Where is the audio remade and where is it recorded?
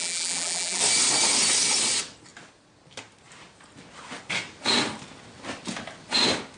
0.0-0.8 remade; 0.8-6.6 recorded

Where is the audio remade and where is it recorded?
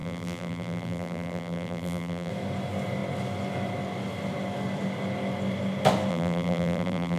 0.0-2.3 remade; 2.3-6.1 recorded; 6.1-7.2 remade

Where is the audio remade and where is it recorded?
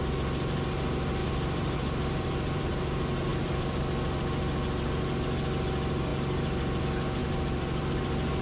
0.0-1.2 recorded; 1.2-2.7 remade; 2.7-3.3 recorded; 3.3-3.8 remade; 3.8-7.2 recorded; 7.2-8.0 remade; 8.0-8.4 recorded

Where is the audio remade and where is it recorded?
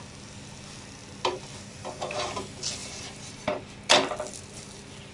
0.0-2.8 recorded; 2.8-3.6 remade; 3.6-5.1 recorded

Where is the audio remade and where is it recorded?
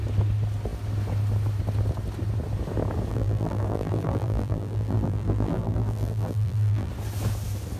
0.0-3.1 recorded; 3.1-6.9 remade; 6.9-7.8 recorded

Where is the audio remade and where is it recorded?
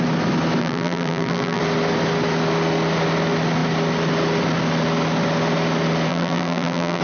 0.0-0.6 recorded; 0.6-1.6 remade; 1.6-6.1 recorded; 6.1-7.0 remade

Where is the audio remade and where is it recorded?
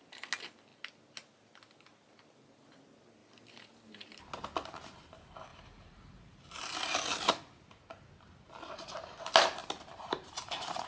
0.0-5.5 recorded; 5.5-6.6 remade; 6.6-9.6 recorded; 9.6-10.9 remade